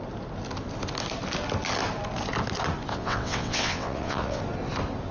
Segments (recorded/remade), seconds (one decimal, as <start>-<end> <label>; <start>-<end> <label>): 0.0-2.9 recorded; 2.9-4.4 remade; 4.4-5.1 recorded